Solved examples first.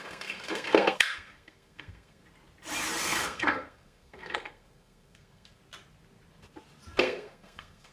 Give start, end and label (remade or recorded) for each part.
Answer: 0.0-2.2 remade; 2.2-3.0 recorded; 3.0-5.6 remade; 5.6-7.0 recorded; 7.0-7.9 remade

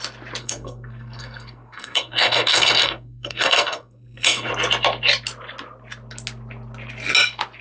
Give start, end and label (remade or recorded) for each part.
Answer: 0.0-0.4 recorded; 0.4-4.5 remade; 4.5-7.6 recorded

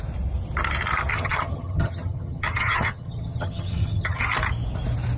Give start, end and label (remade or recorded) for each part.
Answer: 0.0-1.1 recorded; 1.1-4.2 remade; 4.2-5.2 recorded